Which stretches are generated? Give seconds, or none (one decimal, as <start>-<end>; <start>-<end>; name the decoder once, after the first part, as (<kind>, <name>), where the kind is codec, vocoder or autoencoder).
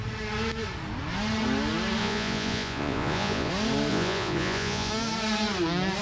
2.0-3.5 (vocoder, Vocos); 3.9-4.9